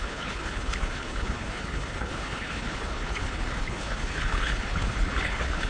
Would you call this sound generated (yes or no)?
yes